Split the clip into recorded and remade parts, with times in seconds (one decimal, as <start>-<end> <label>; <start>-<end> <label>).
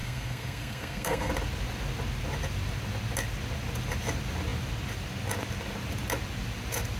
0.0-1.3 remade; 1.3-7.0 recorded